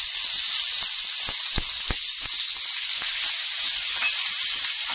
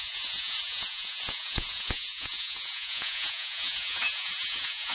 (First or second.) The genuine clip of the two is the first